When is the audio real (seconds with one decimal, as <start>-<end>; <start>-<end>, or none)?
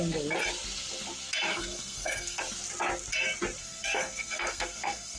0.0-1.5; 2.4-3.6